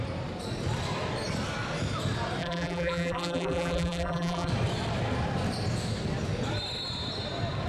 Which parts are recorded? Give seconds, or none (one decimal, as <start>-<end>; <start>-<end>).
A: 0.0-2.4; 4.5-7.7